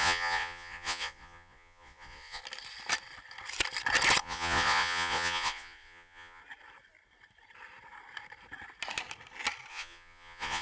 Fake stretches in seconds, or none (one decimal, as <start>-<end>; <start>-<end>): 0.0-2.4; 4.2-6.4; 9.7-10.6